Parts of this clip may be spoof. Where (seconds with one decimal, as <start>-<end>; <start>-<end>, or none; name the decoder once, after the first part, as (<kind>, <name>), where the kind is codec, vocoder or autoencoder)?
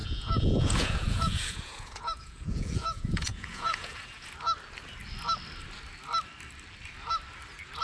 0.0-4.3 (vocoder, Vocos)